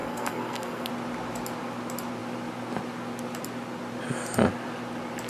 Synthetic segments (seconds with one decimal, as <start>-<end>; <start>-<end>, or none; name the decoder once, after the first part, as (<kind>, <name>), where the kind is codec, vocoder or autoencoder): 0.0-0.9 (codec, SNAC)